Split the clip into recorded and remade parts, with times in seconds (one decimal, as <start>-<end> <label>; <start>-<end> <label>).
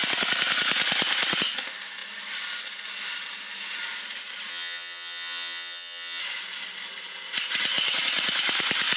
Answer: 0.0-4.5 recorded; 4.5-6.2 remade; 6.2-9.0 recorded